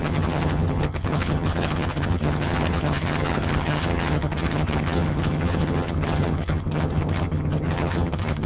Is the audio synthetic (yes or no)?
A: yes